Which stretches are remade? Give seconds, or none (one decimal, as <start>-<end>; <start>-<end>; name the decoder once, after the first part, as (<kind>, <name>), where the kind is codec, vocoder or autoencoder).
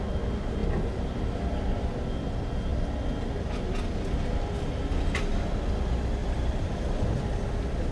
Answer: 0.6-1.3 (vocoder, BigVGAN v2); 6.2-7.0